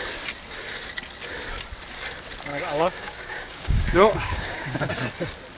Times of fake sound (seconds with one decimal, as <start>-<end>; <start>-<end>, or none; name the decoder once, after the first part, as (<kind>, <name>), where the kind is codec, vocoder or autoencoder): 2.5-4.9 (codec, DAC)